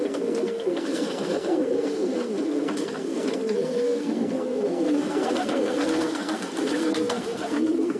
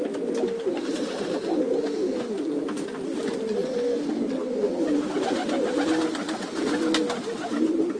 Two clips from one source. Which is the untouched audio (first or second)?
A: second